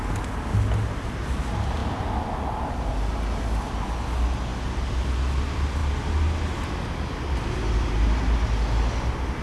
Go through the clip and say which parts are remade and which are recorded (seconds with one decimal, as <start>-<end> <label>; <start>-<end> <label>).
0.0-9.4 recorded